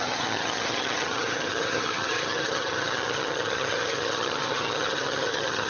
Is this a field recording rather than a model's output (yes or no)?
no